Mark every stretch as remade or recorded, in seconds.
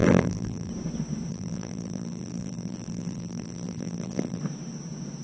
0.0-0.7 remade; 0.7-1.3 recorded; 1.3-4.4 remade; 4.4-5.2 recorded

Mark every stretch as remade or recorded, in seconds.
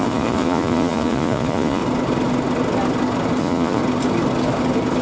0.0-1.8 remade; 1.8-3.4 recorded; 3.4-3.8 remade; 3.8-5.0 recorded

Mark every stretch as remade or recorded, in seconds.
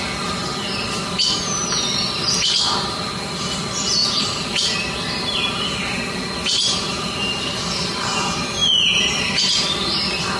0.0-10.4 recorded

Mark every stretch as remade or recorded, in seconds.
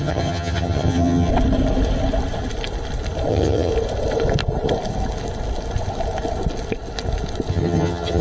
0.0-1.3 remade; 1.3-3.3 recorded; 3.3-3.7 remade; 3.7-7.5 recorded; 7.5-8.2 remade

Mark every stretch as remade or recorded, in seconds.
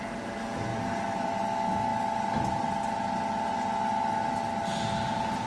0.0-0.7 recorded; 0.7-1.4 remade; 1.4-5.5 recorded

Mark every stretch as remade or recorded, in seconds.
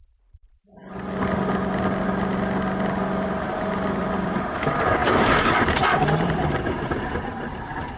0.0-0.8 remade; 0.8-3.4 recorded; 3.4-8.0 remade